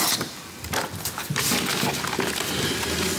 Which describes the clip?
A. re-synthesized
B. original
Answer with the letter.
B